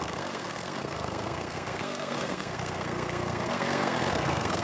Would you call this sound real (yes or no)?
no